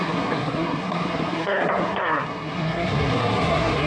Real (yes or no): no